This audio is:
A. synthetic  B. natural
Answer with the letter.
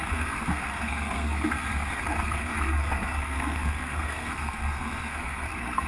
A